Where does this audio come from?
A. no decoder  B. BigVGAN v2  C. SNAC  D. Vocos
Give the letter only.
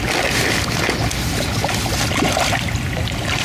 A